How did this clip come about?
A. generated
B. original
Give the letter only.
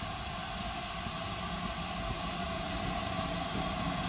B